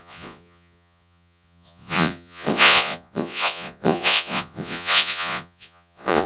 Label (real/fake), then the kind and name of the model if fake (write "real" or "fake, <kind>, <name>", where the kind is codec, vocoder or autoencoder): fake, vocoder, Vocos